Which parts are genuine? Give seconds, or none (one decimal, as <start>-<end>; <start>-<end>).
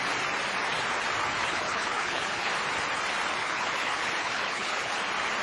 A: 0.0-1.4; 2.5-3.4; 5.0-5.4